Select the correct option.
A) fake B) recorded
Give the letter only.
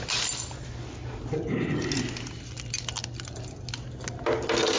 B